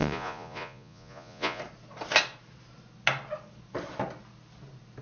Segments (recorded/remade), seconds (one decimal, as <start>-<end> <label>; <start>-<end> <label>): 0.0-1.6 remade; 1.6-5.0 recorded